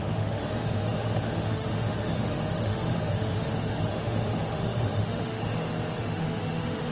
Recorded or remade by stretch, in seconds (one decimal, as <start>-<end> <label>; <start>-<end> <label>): 0.0-5.4 remade; 5.4-6.0 recorded; 6.0-6.9 remade